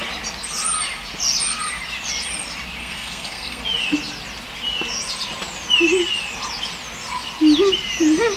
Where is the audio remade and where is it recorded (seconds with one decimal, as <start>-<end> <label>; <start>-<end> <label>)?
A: 0.0-2.8 recorded; 2.8-3.6 remade; 3.6-8.4 recorded